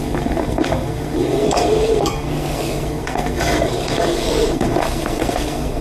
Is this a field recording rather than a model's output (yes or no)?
no